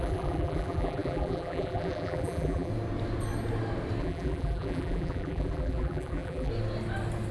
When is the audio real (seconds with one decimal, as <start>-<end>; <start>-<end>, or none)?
2.7-4.0; 6.5-7.3